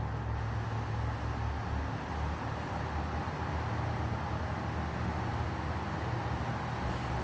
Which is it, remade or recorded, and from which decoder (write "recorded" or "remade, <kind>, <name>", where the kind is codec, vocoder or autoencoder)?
recorded